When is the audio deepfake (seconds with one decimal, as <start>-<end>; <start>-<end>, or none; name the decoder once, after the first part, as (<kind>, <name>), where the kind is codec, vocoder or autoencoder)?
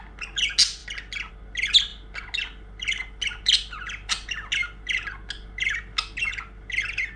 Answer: none